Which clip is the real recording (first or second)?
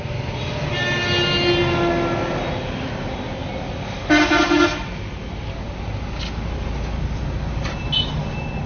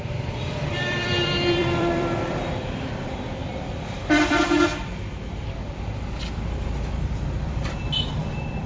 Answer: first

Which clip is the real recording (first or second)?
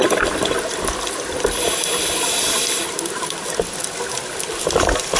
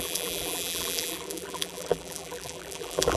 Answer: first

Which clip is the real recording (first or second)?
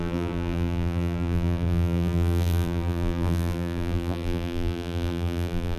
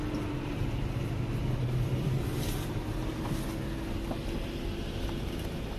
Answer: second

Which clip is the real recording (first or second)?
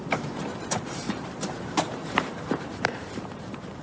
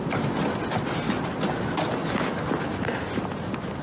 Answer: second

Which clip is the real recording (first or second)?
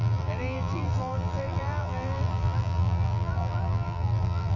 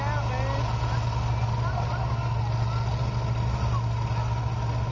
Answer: second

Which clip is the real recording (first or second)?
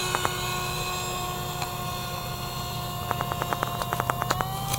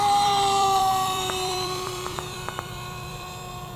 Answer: first